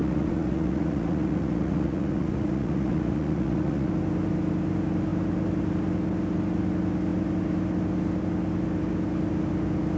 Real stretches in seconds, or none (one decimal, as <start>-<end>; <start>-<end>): 3.9-10.0